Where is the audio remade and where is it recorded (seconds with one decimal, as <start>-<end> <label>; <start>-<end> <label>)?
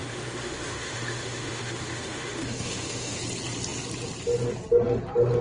0.0-3.2 remade; 3.2-5.4 recorded